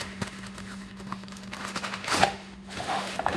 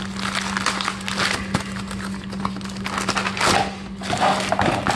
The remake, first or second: first